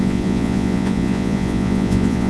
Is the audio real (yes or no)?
no